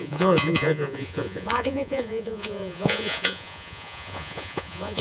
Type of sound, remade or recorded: remade